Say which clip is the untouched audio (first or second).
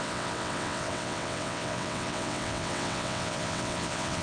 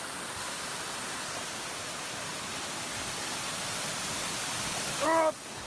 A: second